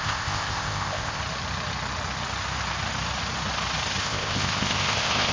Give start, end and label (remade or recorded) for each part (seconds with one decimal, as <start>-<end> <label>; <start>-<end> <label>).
0.0-1.2 remade; 1.2-4.0 recorded; 4.0-5.3 remade